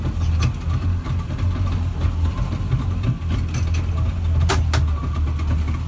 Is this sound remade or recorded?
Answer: recorded